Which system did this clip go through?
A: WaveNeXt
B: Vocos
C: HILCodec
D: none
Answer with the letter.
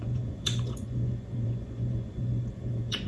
B